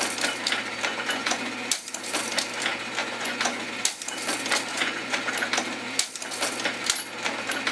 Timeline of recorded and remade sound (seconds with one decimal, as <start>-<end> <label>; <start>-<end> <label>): 0.0-0.9 recorded; 0.9-1.5 remade; 1.5-3.0 recorded; 3.0-3.7 remade; 3.7-4.7 recorded; 4.7-5.3 remade; 5.3-7.7 recorded

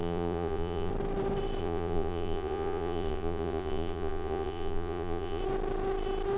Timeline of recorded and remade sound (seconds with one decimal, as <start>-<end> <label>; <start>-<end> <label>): 0.0-0.9 remade; 0.9-1.6 recorded; 1.6-5.4 remade; 5.4-6.4 recorded

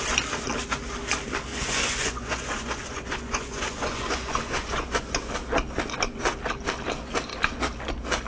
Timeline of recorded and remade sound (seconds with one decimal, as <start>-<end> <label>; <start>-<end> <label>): 0.0-1.5 recorded; 1.5-5.3 remade; 5.3-8.3 recorded